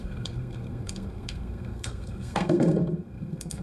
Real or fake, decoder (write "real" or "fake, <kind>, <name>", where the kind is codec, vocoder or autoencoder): fake, codec, SNAC